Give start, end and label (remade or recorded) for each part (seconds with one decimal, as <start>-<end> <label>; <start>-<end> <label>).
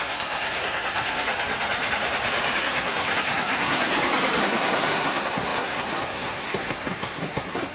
0.0-1.3 remade; 1.3-2.6 recorded; 2.6-3.9 remade; 3.9-4.4 recorded; 4.4-7.7 remade